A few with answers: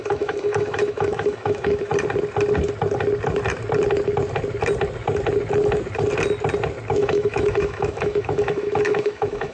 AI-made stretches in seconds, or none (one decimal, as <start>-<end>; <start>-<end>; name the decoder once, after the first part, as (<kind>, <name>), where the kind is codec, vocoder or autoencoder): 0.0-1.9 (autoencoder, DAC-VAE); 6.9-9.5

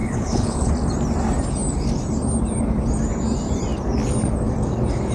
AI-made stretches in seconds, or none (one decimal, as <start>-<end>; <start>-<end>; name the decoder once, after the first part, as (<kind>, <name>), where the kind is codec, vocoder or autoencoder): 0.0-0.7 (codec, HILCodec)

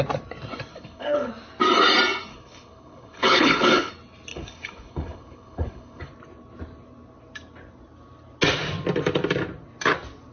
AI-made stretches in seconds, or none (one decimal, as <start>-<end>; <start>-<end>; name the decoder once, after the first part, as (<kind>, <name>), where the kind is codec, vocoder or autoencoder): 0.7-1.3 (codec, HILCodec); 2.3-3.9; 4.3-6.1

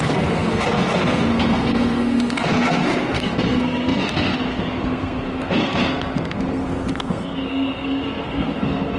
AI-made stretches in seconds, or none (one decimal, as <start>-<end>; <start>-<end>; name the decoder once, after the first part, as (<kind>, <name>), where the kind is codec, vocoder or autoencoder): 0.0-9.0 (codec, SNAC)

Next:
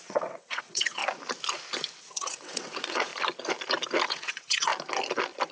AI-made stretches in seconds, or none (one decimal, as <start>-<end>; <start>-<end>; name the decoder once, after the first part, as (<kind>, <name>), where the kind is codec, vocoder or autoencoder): 0.0-1.0 (vocoder, WaveNeXt); 2.0-3.1; 4.1-4.7

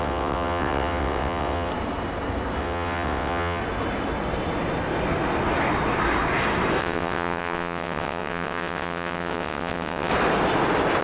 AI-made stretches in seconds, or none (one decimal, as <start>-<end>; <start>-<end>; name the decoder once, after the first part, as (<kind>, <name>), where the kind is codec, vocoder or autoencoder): 0.0-1.7 (vocoder, WaveNeXt); 2.6-3.6; 6.8-10.1